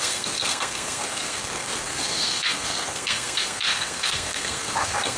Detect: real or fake fake